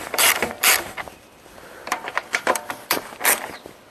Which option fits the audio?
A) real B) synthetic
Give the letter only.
B